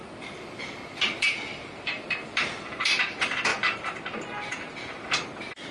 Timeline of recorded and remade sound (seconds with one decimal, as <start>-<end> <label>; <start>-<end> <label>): 0.0-3.0 remade; 3.0-3.5 recorded; 3.5-5.0 remade; 5.0-5.7 recorded